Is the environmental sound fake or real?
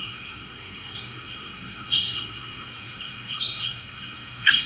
fake